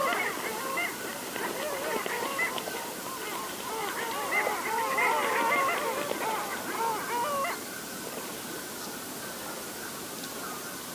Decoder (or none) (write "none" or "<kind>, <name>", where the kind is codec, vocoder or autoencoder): none